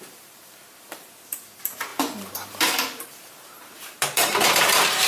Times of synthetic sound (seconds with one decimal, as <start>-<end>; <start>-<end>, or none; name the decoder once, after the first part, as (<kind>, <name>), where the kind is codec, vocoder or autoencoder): 0.0-5.1 (vocoder, BigVGAN v2)